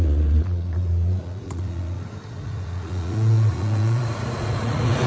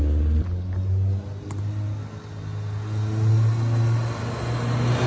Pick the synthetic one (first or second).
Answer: first